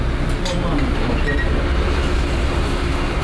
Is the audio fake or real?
real